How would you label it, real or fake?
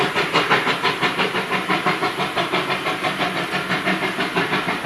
real